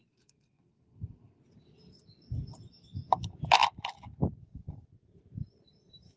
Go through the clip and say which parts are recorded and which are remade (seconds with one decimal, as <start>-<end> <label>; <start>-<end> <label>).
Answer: 0.0-1.4 remade; 1.4-6.2 recorded